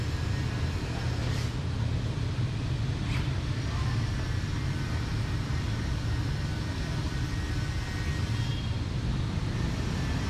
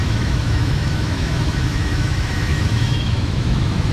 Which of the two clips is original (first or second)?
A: first